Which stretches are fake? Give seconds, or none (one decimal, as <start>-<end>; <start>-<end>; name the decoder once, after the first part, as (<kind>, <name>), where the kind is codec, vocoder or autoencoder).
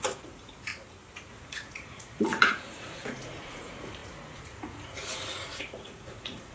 0.0-0.7 (vocoder, Vocos); 1.3-6.5